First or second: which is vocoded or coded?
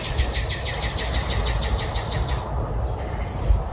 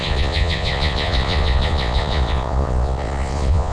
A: second